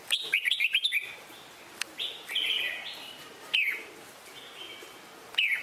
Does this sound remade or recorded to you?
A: recorded